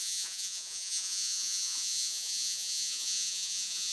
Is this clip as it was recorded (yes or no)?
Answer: no